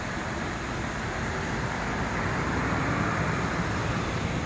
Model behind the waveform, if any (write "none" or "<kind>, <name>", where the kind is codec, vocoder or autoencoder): vocoder, BigVGAN v2